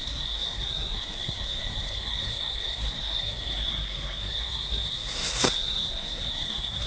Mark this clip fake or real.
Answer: fake